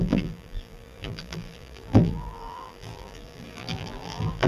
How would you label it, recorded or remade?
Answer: remade